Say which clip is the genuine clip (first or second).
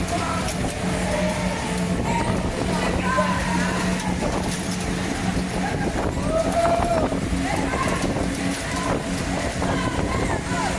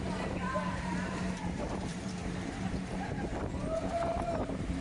first